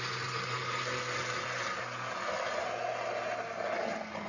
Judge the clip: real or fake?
real